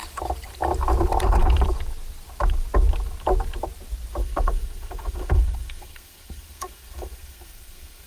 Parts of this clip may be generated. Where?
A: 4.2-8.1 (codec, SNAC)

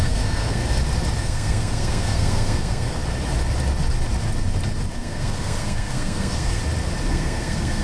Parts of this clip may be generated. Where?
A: 0.0-0.6 (codec, SNAC); 1.2-3.0; 4.9-6.6; 7.1-7.8

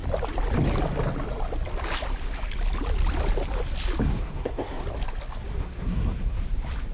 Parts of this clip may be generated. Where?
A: 4.1-4.8 (codec, SNAC); 5.6-6.4